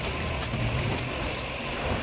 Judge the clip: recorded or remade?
recorded